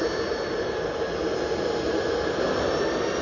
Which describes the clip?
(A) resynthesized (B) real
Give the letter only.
B